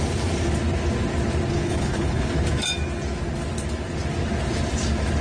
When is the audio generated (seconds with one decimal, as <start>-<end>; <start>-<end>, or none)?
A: 1.5-2.3